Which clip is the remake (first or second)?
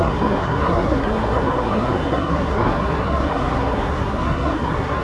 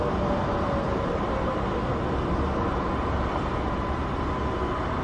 first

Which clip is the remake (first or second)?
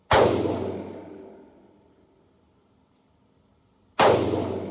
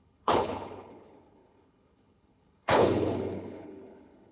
second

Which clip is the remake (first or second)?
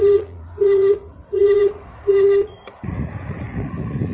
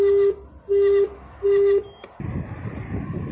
first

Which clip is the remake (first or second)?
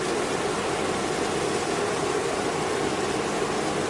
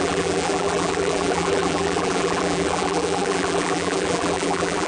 second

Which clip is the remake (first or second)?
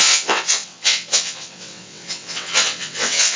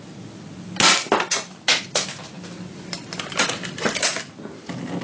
first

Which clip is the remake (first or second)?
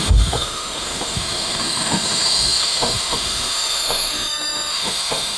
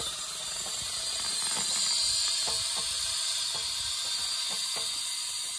first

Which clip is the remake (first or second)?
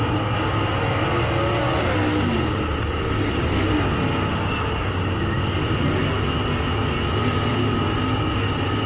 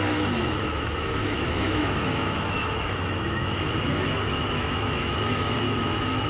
second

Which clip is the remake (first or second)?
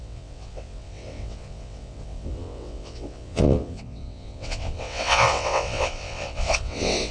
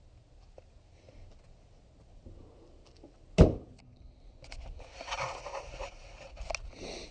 first